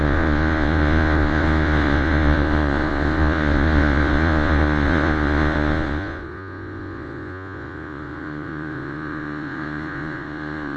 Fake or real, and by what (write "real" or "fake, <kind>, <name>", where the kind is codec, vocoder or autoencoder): fake, vocoder, Vocos